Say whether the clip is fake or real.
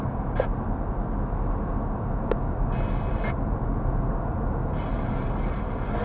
real